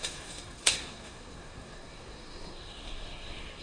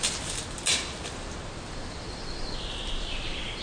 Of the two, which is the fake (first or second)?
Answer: first